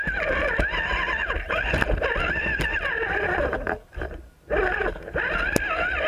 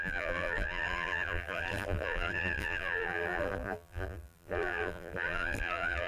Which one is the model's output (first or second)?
second